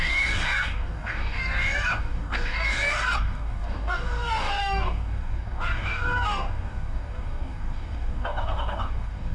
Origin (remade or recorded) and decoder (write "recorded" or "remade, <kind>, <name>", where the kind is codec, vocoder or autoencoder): remade, codec, DAC